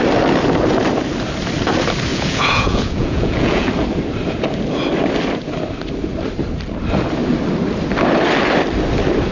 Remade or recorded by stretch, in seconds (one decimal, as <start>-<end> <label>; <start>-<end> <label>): 0.0-2.1 recorded; 2.1-3.7 remade; 3.7-9.3 recorded